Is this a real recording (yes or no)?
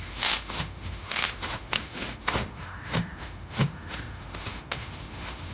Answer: no